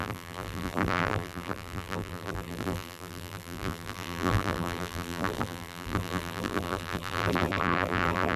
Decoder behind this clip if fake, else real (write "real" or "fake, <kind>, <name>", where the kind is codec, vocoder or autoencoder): fake, vocoder, BigVGAN v2